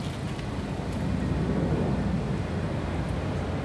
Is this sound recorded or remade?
recorded